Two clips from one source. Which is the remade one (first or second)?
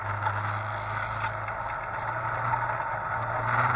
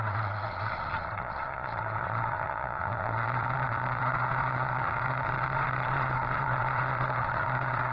second